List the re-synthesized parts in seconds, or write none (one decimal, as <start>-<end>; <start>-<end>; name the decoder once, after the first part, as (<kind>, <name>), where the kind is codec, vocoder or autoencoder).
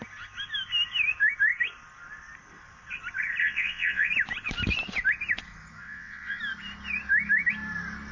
3.4-4.1 (vocoder, WaveNeXt); 5.8-6.4